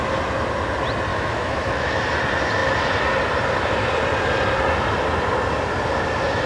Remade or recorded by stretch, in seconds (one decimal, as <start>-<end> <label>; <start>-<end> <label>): 0.0-1.1 recorded; 1.1-2.0 remade; 2.0-6.5 recorded